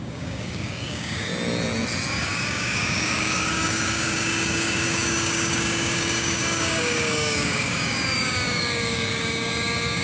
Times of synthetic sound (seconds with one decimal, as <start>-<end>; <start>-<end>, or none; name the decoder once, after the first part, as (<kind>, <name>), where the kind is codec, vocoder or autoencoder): 0.0-1.3 (codec, DAC); 2.1-10.0